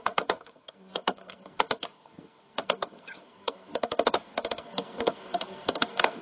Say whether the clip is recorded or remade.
remade